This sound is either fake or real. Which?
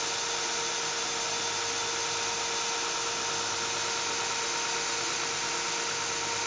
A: real